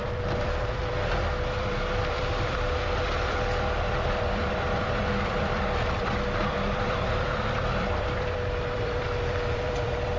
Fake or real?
fake